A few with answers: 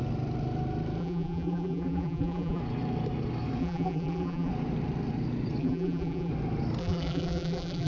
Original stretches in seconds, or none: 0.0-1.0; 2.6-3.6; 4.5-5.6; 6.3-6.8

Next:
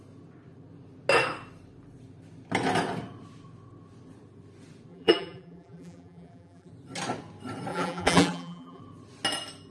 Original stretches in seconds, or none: 0.0-4.9; 6.7-7.7; 8.8-9.7

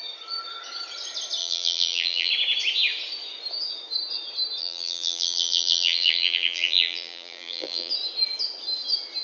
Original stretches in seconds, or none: 0.0-1.4; 2.3-4.6; 7.9-9.2

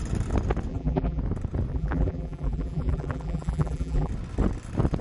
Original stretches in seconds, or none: 0.0-0.7; 1.2-1.7; 4.1-5.0

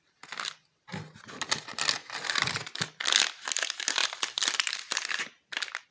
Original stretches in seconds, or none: 0.0-4.0; 5.2-5.9

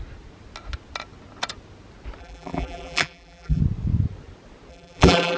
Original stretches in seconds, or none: 0.0-2.2; 3.6-4.7

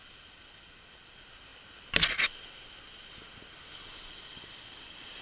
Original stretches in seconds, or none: 0.0-5.2

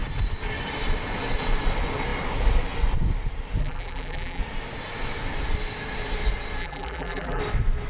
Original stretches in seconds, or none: 0.0-3.6; 4.4-6.6; 7.4-7.9